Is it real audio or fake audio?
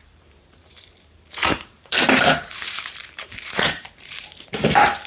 fake